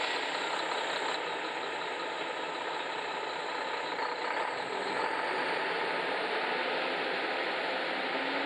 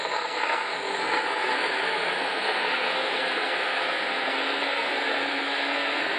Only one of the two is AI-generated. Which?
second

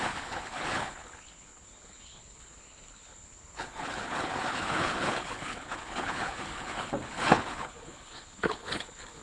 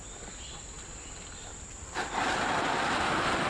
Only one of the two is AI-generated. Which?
first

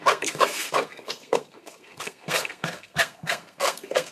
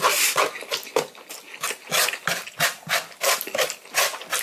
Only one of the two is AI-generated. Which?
first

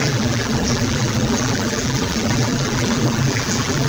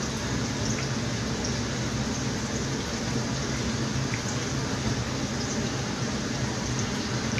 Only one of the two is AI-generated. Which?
first